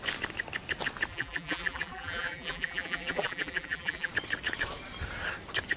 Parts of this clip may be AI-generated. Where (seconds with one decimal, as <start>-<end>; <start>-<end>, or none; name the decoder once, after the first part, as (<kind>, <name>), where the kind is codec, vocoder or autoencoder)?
1.1-4.1 (vocoder, BigVGAN v2)